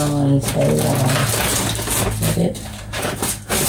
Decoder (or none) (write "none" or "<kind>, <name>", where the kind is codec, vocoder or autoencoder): none